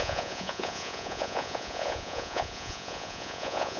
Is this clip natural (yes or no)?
no